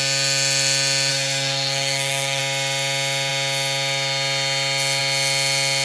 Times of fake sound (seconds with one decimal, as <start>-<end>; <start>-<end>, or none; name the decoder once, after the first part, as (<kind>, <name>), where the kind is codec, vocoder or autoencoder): 1.1-2.4 (codec, SNAC)